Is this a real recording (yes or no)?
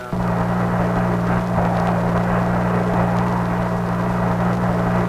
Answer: yes